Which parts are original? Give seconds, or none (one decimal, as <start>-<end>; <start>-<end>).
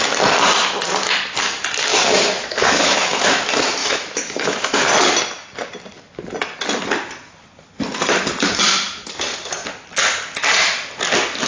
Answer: 0.0-1.9; 3.4-3.8; 4.9-11.5